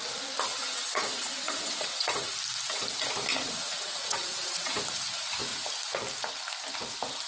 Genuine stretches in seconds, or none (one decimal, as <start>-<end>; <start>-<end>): 0.0-0.5; 2.3-3.3; 4.8-7.3